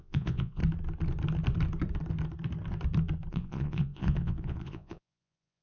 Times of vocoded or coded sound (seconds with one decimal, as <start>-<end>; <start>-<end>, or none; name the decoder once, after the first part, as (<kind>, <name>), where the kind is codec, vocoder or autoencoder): 0.0-0.6 (vocoder, Vocos); 3.3-5.6